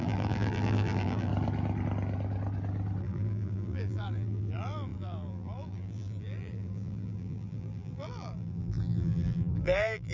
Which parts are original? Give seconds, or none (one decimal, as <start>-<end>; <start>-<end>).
1.3-3.0